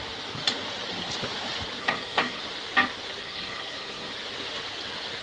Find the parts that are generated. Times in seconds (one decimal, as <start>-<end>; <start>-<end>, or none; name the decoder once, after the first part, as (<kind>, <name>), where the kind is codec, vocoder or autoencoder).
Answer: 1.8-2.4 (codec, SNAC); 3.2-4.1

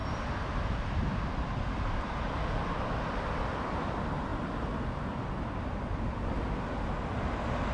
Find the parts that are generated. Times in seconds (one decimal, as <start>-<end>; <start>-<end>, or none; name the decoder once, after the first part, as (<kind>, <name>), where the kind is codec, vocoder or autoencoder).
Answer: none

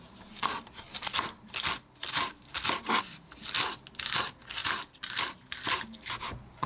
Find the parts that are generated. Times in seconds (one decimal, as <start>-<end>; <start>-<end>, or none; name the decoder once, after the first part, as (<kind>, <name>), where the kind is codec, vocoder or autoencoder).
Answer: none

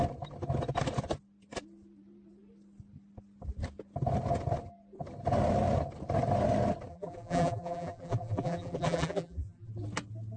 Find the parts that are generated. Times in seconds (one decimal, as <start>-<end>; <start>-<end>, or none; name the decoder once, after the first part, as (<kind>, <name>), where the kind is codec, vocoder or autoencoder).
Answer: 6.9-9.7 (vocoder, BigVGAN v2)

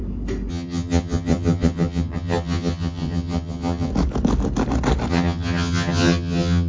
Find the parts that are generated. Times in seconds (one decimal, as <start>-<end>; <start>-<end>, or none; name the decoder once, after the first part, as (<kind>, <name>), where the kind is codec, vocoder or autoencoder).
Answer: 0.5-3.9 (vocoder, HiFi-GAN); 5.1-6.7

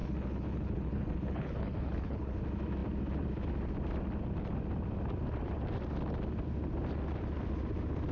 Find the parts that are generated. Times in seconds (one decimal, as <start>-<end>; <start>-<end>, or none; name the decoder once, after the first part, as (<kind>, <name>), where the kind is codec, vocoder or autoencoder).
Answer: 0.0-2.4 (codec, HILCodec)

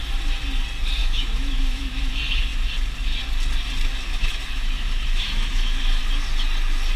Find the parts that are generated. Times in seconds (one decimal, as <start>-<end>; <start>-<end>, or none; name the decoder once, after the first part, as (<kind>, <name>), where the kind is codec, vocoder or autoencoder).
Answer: 1.0-2.1 (autoencoder, DAC-VAE); 4.1-6.0

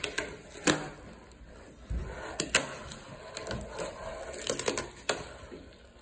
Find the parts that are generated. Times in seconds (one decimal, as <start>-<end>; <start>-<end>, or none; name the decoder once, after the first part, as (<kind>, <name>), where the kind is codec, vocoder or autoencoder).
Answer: none